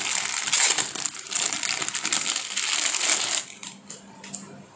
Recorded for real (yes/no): yes